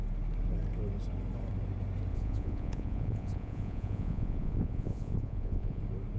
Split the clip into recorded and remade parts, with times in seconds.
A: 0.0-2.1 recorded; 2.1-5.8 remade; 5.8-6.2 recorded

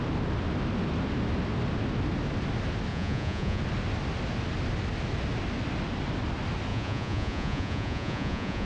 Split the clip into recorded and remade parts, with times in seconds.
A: 0.0-2.9 recorded; 2.9-3.6 remade; 3.6-6.7 recorded; 6.7-8.7 remade

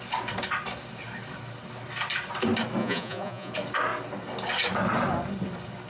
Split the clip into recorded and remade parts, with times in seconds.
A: 0.0-2.8 recorded; 2.8-3.5 remade; 3.5-5.9 recorded

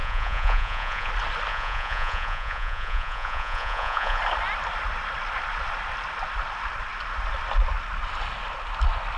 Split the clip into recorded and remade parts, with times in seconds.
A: 0.0-1.1 remade; 1.1-1.5 recorded; 1.5-4.2 remade; 4.2-9.2 recorded